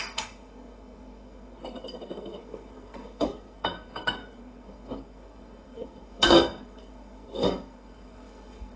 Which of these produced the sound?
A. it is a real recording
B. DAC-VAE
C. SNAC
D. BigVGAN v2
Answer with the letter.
C